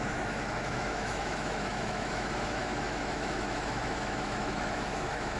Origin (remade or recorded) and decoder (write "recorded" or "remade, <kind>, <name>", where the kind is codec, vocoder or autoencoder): remade, autoencoder, DAC-VAE